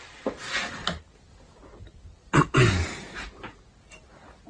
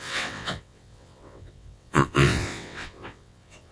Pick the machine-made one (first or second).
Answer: second